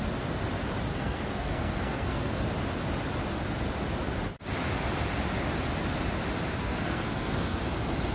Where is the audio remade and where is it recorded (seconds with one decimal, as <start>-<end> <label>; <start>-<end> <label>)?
0.0-0.9 recorded; 0.9-2.4 remade; 2.4-6.6 recorded; 6.6-7.6 remade; 7.6-8.1 recorded